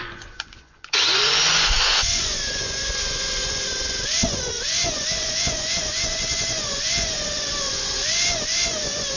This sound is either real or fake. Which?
fake